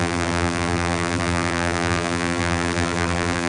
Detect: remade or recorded remade